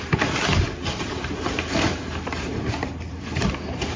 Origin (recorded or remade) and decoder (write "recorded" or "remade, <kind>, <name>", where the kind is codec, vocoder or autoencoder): remade, vocoder, BigVGAN v2